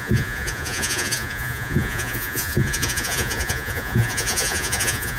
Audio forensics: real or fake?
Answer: fake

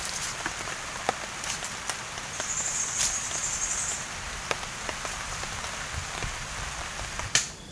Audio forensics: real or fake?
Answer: real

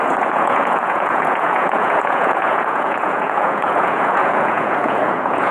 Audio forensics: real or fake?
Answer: fake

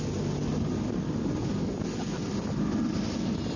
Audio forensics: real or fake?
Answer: real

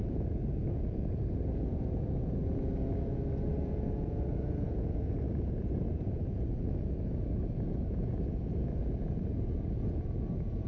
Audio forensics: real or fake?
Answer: fake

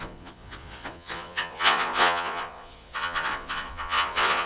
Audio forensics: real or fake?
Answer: fake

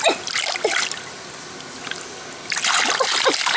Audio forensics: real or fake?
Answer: real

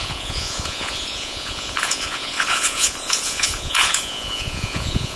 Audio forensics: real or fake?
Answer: fake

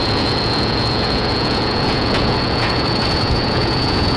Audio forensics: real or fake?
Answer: fake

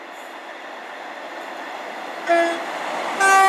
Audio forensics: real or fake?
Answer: real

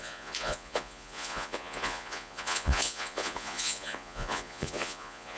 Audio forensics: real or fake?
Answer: fake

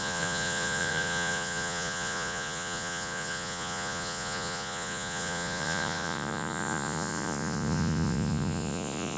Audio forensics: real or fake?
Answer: fake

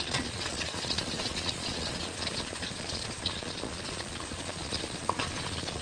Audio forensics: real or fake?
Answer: fake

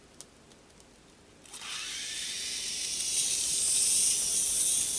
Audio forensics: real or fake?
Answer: real